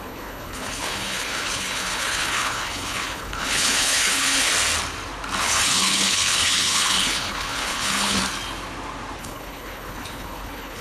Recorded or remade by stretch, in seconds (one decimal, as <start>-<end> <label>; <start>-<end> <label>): 0.0-4.5 remade; 4.5-5.4 recorded; 5.4-8.2 remade; 8.2-9.2 recorded; 9.2-10.8 remade